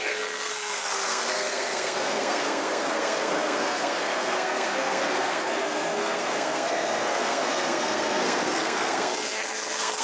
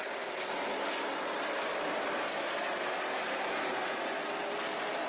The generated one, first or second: first